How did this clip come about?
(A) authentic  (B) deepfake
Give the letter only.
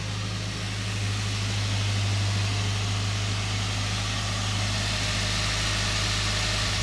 A